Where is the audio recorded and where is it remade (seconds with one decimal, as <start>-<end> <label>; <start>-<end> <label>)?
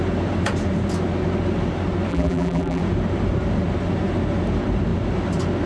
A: 0.0-2.1 recorded; 2.1-2.8 remade; 2.8-5.7 recorded